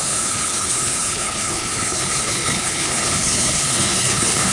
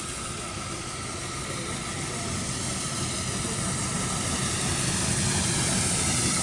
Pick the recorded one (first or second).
second